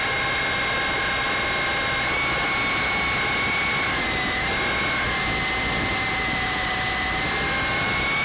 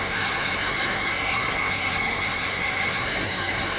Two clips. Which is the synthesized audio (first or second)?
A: second